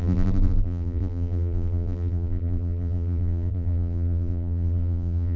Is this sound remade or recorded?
remade